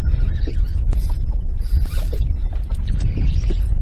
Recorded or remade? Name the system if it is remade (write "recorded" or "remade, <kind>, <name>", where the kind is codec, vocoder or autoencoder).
remade, vocoder, BigVGAN v2